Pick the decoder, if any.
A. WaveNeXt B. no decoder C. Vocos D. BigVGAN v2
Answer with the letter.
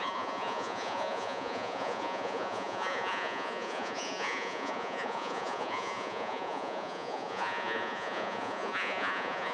C